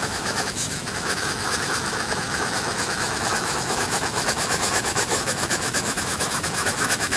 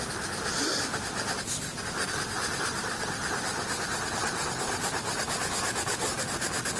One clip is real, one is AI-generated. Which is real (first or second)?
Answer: second